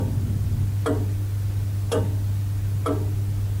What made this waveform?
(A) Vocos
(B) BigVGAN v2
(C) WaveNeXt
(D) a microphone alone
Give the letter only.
D